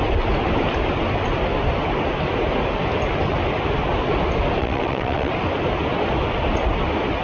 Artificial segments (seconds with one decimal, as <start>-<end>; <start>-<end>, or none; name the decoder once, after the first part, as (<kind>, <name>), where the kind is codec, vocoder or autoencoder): 4.6-5.3 (vocoder, WaveNeXt)